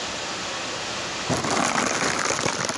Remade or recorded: recorded